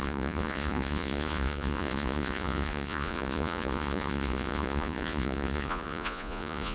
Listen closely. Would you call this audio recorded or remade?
remade